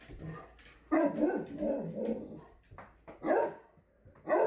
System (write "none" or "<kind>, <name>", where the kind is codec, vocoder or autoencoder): none